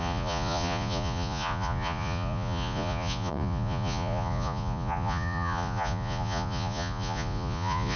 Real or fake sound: fake